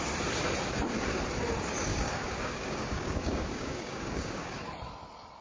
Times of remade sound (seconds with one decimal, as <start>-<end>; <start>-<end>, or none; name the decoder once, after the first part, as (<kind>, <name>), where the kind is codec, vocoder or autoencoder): 1.9-4.5 (codec, DAC)